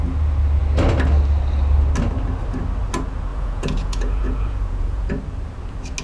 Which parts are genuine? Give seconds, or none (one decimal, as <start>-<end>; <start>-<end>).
0.0-3.3; 5.1-6.0